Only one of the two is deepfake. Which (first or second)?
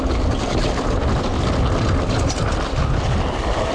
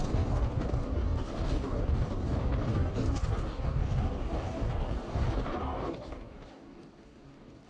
second